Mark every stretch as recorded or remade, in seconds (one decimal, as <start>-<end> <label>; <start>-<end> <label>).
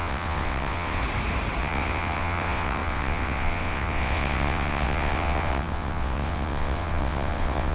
0.0-1.0 remade; 1.0-1.6 recorded; 1.6-7.7 remade